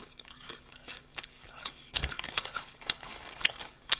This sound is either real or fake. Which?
fake